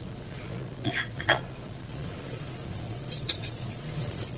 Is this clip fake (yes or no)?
yes